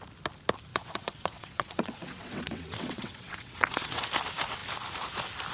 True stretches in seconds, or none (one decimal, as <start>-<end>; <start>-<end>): 0.0-0.7; 4.0-5.5